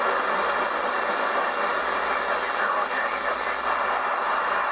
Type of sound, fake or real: real